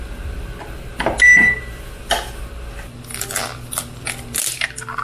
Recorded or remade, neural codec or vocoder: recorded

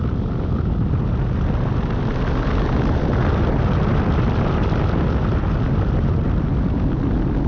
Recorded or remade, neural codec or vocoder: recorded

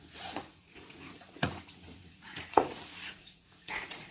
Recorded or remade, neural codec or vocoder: remade, vocoder, Vocos